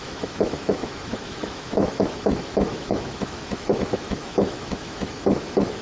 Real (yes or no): no